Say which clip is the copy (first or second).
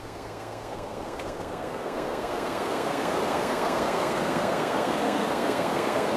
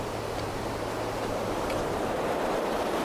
first